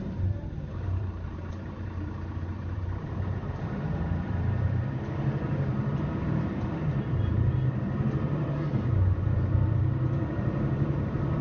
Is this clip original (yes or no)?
no